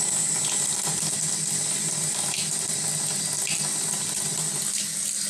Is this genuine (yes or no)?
yes